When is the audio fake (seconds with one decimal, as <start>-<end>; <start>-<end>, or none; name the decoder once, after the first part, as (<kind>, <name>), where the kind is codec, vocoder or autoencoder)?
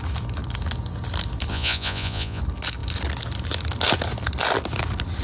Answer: 1.5-2.4 (vocoder, Vocos)